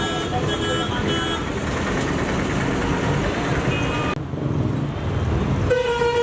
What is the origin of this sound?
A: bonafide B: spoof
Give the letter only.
A